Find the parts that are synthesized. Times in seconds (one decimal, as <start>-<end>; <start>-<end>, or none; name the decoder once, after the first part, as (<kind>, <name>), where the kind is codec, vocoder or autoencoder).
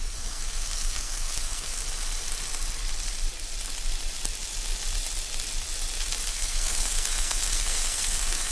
0.0-1.8 (codec, SNAC); 6.3-8.5